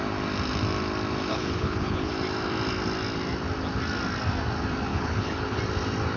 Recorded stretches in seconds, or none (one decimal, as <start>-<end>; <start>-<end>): 0.0-1.3; 2.1-4.9; 5.6-6.2